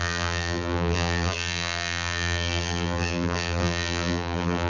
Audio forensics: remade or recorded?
remade